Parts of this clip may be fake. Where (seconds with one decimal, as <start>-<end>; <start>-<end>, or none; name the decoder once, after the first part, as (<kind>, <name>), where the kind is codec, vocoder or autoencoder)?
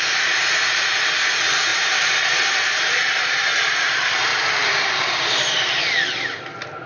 1.7-5.8 (vocoder, BigVGAN v2)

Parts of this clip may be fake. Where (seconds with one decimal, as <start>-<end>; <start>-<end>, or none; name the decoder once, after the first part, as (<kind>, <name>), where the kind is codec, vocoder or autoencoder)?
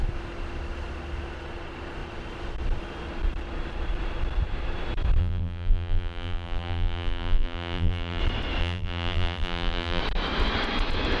5.2-8.2 (vocoder, BigVGAN v2); 8.6-10.0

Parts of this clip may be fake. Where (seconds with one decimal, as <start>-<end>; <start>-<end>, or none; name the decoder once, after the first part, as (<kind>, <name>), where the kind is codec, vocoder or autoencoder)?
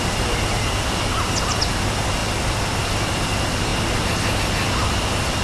none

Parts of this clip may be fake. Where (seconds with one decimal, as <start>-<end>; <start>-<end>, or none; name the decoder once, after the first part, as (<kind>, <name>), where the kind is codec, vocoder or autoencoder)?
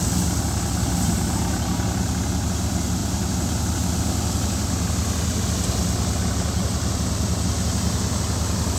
none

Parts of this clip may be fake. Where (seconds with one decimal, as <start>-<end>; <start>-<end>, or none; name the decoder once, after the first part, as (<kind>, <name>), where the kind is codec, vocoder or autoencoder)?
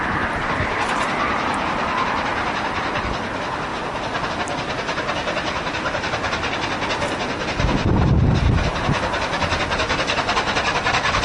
none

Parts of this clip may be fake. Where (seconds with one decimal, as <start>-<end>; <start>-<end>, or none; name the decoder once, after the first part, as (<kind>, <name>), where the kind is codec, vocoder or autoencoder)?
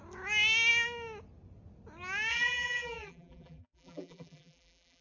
2.3-5.0 (vocoder, BigVGAN v2)